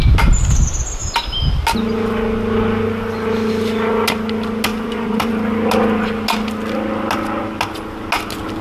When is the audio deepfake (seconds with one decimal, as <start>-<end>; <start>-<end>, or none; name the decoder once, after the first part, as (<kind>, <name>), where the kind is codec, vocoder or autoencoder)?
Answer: 4.7-5.3 (vocoder, BigVGAN v2)